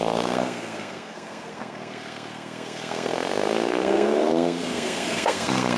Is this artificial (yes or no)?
yes